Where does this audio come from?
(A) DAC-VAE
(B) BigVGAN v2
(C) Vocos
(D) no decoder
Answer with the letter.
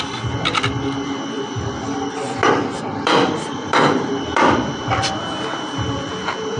B